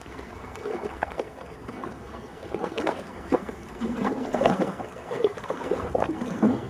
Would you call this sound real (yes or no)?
no